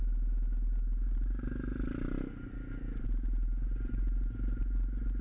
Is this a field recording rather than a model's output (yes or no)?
yes